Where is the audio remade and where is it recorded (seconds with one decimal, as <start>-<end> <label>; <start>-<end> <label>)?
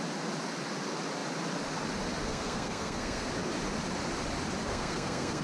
0.0-2.3 recorded; 2.3-3.3 remade; 3.3-4.7 recorded; 4.7-5.4 remade